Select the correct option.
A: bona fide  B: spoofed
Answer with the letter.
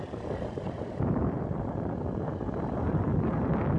A